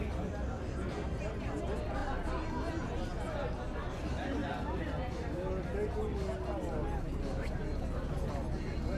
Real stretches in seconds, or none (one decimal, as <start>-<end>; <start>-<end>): 0.0-9.0